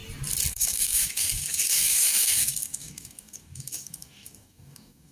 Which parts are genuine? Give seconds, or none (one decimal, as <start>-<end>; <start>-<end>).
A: 0.0-0.5